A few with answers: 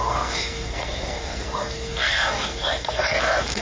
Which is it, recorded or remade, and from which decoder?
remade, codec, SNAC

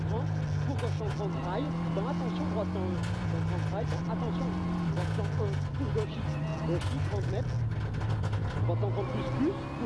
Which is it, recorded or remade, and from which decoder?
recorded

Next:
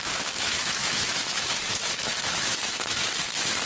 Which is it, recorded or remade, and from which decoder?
remade, autoencoder, DAC-VAE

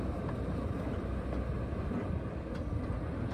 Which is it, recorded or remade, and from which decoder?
recorded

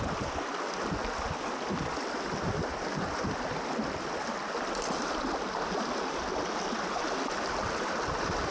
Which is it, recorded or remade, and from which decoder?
recorded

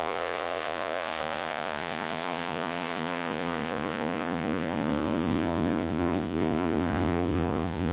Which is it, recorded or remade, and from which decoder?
remade, vocoder, Vocos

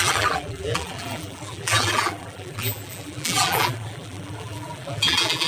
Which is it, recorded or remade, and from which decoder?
remade, vocoder, BigVGAN v2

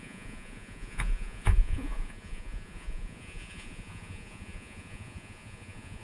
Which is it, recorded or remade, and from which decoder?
remade, vocoder, Vocos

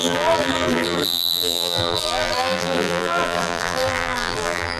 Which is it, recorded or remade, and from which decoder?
remade, vocoder, BigVGAN v2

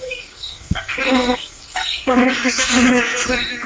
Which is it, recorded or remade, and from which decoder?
remade, codec, SNAC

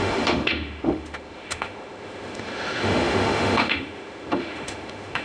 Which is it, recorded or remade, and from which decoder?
remade, autoencoder, DAC-VAE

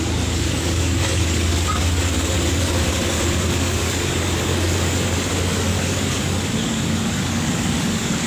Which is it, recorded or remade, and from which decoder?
remade, codec, DAC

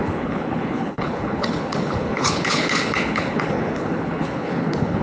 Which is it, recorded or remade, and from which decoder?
remade, codec, HILCodec